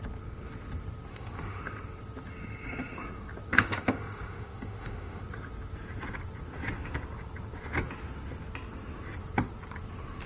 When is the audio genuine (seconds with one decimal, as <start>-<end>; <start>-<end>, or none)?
0.0-1.1; 1.6-3.5; 5.2-10.3